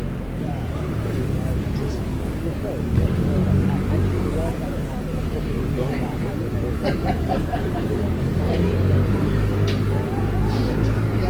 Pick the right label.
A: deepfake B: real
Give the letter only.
A